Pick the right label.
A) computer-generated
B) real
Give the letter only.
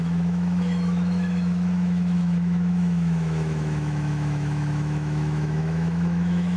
A